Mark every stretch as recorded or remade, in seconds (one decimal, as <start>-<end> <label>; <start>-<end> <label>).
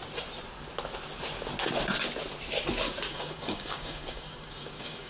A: 0.0-3.1 recorded; 3.1-5.1 remade